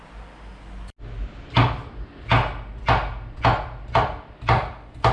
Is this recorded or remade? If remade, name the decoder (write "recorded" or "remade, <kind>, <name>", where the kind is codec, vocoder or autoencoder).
recorded